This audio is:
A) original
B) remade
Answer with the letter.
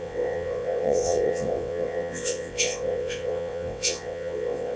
B